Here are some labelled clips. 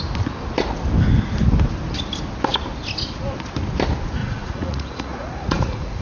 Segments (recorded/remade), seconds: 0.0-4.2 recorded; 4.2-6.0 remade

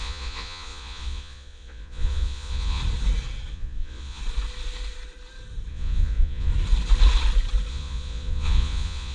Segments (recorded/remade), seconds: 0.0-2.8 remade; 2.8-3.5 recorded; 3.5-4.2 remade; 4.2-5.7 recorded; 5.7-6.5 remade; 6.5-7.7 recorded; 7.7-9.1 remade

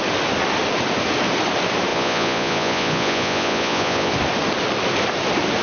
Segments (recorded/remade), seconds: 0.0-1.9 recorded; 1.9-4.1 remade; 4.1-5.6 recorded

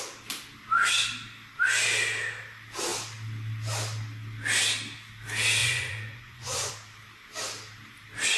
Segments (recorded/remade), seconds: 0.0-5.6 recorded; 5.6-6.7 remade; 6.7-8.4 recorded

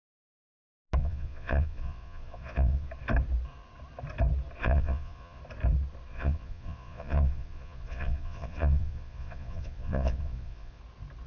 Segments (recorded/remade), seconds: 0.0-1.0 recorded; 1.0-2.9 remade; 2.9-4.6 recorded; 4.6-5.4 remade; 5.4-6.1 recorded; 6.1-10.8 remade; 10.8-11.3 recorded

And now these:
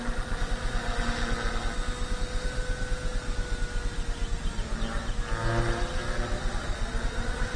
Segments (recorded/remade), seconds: 0.0-7.6 recorded

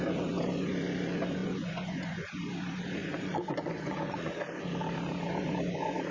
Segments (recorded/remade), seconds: 0.0-1.4 recorded; 1.4-2.2 remade; 2.2-3.0 recorded; 3.0-4.3 remade; 4.3-6.1 recorded